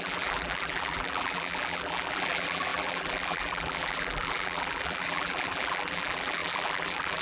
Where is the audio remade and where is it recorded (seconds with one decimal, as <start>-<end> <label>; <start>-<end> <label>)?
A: 0.0-7.2 remade